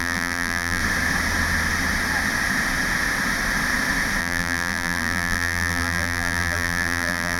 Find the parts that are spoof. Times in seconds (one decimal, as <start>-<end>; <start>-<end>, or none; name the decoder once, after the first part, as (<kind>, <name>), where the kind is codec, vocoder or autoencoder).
0.0-0.8 (vocoder, BigVGAN v2); 4.2-7.4